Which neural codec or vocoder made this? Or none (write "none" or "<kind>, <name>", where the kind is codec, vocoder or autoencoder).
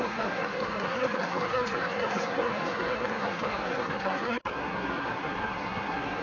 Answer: codec, SNAC